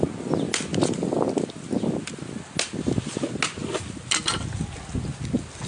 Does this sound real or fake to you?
real